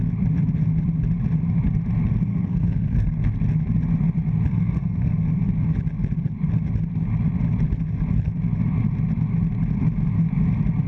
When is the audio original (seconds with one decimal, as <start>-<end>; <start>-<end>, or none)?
0.0-2.3; 3.3-4.5; 5.3-10.9